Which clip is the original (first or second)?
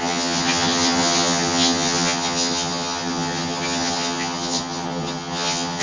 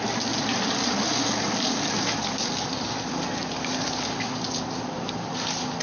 second